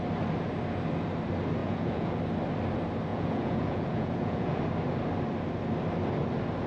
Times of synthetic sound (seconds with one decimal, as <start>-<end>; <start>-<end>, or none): 1.6-2.2; 3.1-4.6